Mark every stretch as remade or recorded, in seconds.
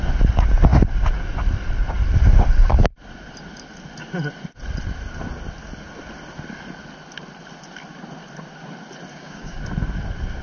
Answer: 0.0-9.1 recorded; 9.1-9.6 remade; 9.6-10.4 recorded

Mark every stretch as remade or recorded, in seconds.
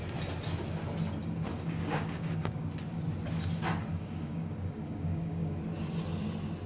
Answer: 0.0-1.5 recorded; 1.5-2.7 remade; 2.7-3.9 recorded; 3.9-5.6 remade; 5.6-6.7 recorded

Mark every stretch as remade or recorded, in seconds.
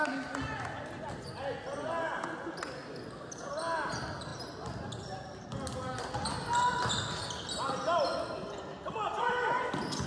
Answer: 0.0-10.1 recorded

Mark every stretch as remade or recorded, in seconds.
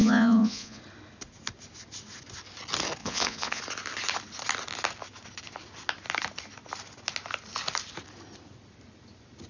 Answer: 0.0-0.8 remade; 0.8-3.0 recorded; 3.0-3.6 remade; 3.6-9.5 recorded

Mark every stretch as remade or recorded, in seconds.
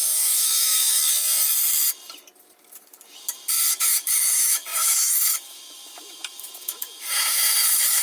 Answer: 0.0-1.0 remade; 1.0-3.7 recorded; 3.7-8.0 remade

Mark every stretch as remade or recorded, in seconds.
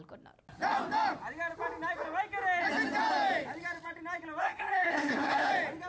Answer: 0.0-4.4 recorded; 4.4-5.5 remade; 5.5-5.9 recorded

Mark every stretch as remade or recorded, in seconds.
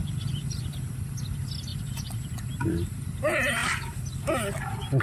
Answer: 0.0-1.7 recorded; 1.7-2.4 remade; 2.4-3.6 recorded; 3.6-4.1 remade; 4.1-5.0 recorded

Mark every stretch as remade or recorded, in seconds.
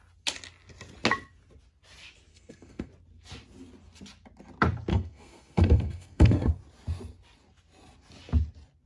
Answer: 0.0-2.3 recorded; 2.3-2.9 remade; 2.9-4.9 recorded; 4.9-6.5 remade; 6.5-8.9 recorded